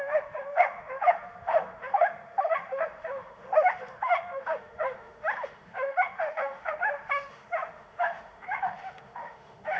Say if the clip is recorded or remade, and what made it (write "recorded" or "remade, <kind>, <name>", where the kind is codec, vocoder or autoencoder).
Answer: remade, autoencoder, DAC-VAE